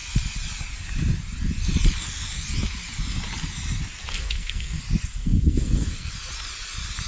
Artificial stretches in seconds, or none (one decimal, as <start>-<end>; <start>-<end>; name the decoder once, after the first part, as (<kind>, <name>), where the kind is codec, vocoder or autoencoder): 4.0-4.8 (codec, SNAC); 5.2-6.1